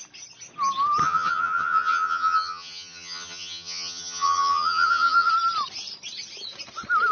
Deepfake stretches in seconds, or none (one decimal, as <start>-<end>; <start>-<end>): 1.0-5.3